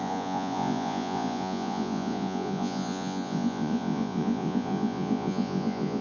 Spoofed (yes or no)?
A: yes